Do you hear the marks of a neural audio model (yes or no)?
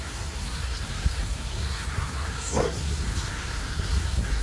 yes